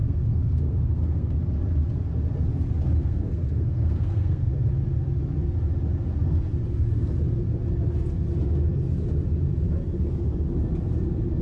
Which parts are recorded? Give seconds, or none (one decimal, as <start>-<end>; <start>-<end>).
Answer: 1.4-3.0; 4.5-11.4